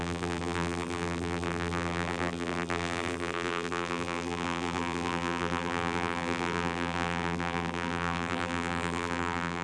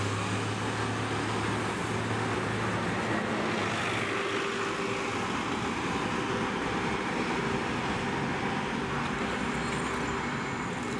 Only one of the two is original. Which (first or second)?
second